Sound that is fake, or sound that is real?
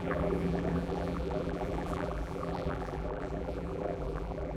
fake